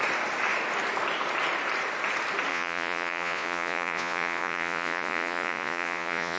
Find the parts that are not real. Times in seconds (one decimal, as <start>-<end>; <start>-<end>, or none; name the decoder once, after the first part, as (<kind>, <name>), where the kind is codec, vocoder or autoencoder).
2.5-6.4 (vocoder, Vocos)